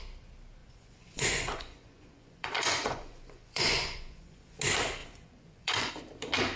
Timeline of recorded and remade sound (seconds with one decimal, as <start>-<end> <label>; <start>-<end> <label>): 0.0-0.6 recorded; 0.6-4.6 remade; 4.6-5.0 recorded; 5.0-5.9 remade; 5.9-6.6 recorded